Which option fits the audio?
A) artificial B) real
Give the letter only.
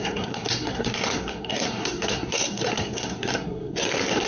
A